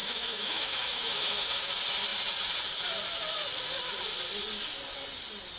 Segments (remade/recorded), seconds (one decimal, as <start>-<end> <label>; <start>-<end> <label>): 0.0-1.7 remade; 1.7-5.6 recorded